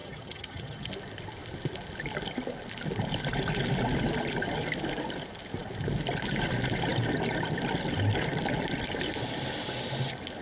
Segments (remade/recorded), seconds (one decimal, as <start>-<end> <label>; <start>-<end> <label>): 0.0-0.9 remade; 0.9-10.4 recorded